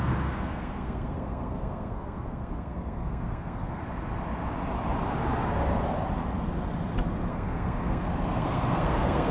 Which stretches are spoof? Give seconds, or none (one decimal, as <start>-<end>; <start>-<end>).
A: 0.0-3.8; 7.3-9.3